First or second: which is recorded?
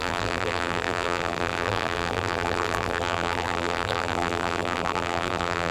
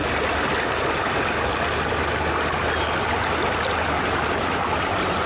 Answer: second